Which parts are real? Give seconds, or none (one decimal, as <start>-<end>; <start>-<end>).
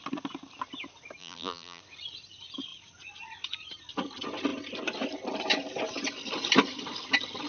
0.0-1.2; 1.8-7.5